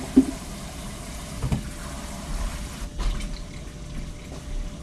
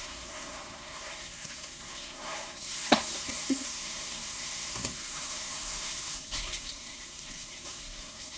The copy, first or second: second